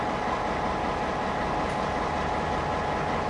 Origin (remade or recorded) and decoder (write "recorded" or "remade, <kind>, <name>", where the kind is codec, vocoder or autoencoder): recorded